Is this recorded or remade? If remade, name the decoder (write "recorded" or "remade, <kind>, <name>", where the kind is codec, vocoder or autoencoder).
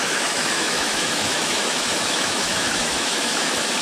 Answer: remade, autoencoder, DAC-VAE